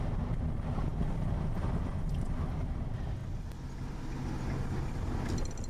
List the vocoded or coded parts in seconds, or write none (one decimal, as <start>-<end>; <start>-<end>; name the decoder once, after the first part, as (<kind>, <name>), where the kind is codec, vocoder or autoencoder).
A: none